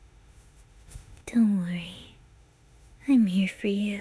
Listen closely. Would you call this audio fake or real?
fake